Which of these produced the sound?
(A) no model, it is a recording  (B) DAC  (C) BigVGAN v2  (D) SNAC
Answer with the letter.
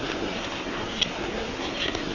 D